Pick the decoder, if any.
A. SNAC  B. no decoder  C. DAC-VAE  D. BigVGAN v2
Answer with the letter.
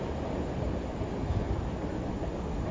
B